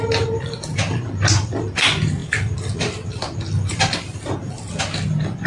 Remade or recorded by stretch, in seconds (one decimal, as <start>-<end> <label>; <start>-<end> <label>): 0.0-5.5 recorded